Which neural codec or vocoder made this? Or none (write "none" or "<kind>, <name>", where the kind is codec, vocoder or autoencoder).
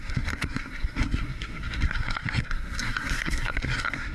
codec, SNAC